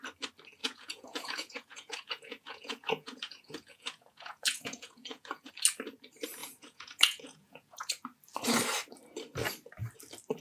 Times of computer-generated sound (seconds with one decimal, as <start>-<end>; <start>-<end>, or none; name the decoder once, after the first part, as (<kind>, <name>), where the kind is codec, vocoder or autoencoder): 0.6-5.5 (vocoder, Vocos); 6.4-7.9